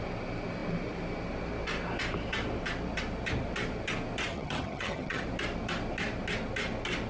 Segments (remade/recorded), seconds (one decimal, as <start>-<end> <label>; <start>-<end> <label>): 0.0-4.3 recorded; 4.3-5.2 remade; 5.2-7.1 recorded